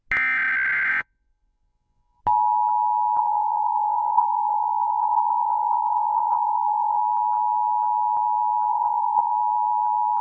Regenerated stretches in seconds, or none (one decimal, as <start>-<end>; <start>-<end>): 0.9-2.2; 3.2-7.0; 8.7-9.3